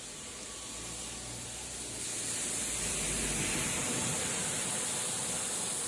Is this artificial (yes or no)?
no